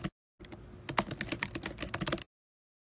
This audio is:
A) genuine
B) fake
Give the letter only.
A